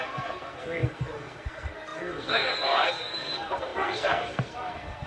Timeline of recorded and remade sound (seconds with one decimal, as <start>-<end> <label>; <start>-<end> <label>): 0.0-5.1 remade